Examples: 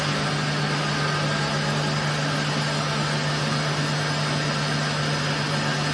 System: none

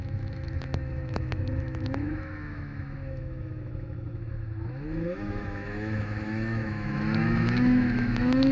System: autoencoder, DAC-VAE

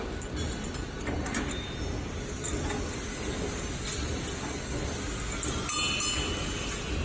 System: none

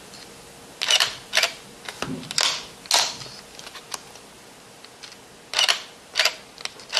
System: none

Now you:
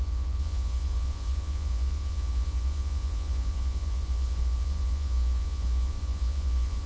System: vocoder, Vocos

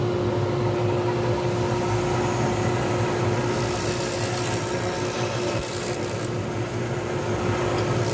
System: none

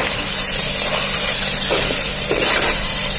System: none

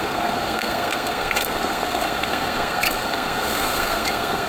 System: codec, SNAC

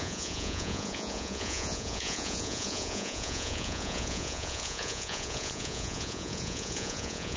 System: vocoder, Vocos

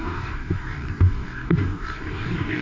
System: codec, DAC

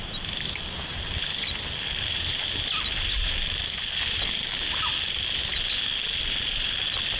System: none